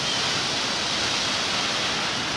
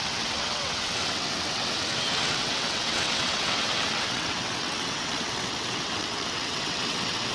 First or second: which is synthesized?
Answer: second